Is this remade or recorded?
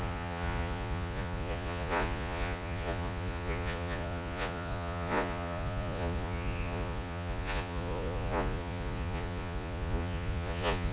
remade